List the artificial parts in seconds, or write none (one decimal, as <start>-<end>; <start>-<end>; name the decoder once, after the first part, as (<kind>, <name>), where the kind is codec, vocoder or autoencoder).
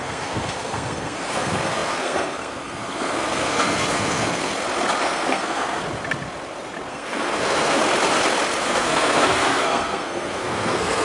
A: 0.0-4.5 (codec, SNAC); 5.0-5.8; 6.9-7.8; 8.6-11.0